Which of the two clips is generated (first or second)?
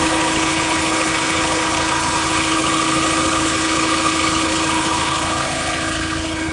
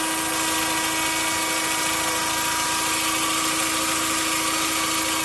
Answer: first